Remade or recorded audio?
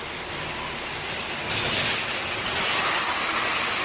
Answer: recorded